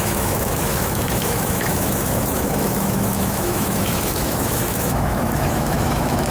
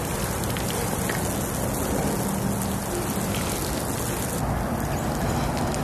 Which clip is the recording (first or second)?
second